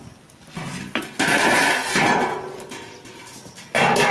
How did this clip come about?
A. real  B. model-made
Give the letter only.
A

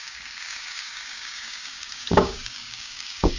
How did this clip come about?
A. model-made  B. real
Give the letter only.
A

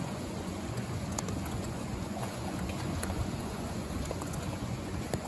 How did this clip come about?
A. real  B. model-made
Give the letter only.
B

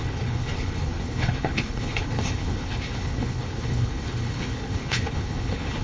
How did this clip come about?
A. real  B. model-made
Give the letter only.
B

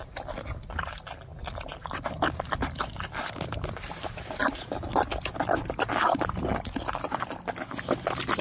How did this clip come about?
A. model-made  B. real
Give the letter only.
B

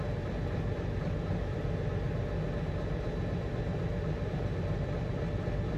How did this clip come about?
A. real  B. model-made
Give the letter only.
A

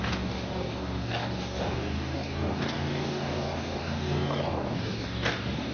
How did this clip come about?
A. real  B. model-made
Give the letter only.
B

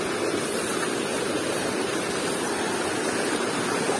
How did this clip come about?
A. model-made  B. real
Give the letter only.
B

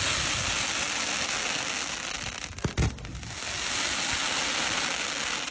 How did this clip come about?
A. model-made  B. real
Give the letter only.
B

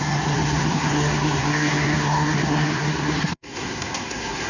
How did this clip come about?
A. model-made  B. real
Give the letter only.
A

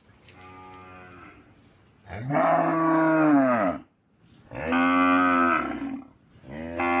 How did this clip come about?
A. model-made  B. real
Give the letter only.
B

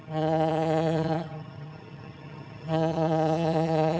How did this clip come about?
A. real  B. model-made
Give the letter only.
B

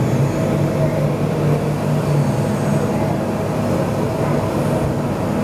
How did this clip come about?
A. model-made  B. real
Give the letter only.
B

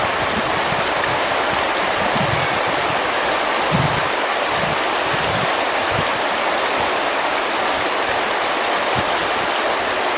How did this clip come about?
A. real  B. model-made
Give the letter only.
A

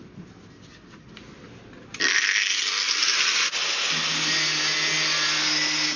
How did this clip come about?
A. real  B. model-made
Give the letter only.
A